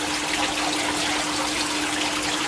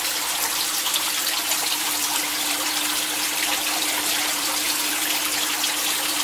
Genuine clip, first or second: first